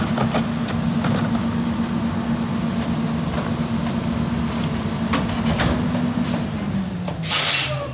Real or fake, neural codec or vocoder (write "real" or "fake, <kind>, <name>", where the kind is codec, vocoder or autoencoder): real